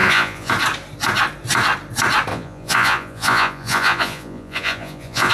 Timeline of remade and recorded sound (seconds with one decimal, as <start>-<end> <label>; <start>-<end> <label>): 0.0-0.5 remade; 0.5-2.3 recorded; 2.3-5.3 remade